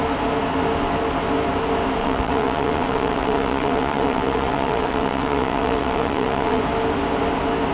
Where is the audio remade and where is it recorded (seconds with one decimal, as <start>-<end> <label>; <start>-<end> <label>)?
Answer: 0.0-2.0 recorded; 2.0-6.6 remade; 6.6-7.7 recorded